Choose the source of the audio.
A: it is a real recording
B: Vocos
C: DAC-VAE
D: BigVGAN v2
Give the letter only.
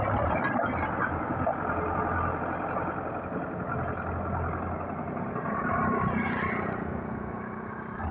A